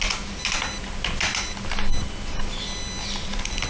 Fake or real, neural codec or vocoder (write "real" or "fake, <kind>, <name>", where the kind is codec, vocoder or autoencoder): real